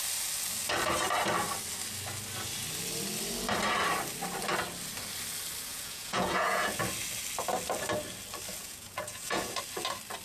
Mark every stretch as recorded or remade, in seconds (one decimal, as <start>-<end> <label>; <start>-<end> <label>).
0.0-5.7 recorded; 5.7-6.8 remade; 6.8-8.6 recorded; 8.6-9.5 remade; 9.5-10.2 recorded